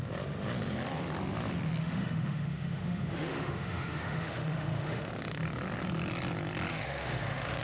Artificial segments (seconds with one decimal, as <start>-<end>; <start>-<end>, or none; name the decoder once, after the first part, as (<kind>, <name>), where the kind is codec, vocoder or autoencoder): 1.8-5.1 (autoencoder, DAC-VAE); 6.7-7.6